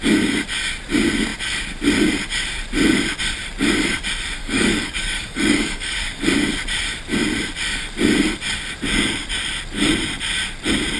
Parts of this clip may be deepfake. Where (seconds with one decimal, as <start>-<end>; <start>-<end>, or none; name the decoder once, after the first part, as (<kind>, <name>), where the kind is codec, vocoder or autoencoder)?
4.4-6.2 (codec, DAC)